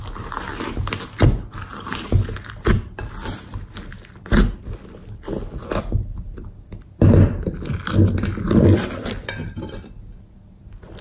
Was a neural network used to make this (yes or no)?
no